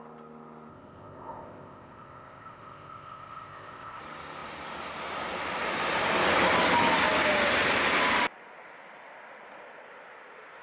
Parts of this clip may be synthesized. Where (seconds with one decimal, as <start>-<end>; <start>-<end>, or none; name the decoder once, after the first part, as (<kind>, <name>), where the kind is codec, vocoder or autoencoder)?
0.7-4.0 (codec, ZipCodec)